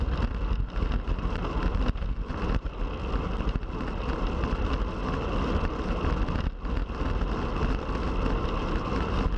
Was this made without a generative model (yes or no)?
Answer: yes